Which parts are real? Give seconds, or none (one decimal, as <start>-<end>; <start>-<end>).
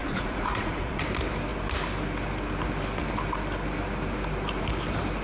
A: 1.0-5.2